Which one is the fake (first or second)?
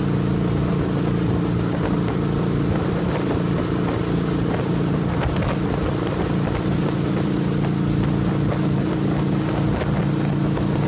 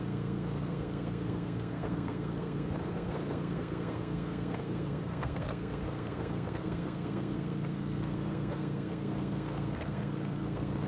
second